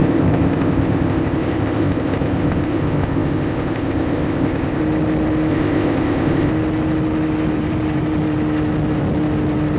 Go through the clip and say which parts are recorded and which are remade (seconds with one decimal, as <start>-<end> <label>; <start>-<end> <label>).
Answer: 0.0-4.8 remade; 4.8-5.5 recorded; 5.5-6.5 remade; 6.5-9.8 recorded